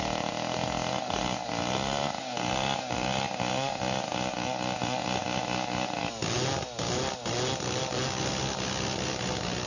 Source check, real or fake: real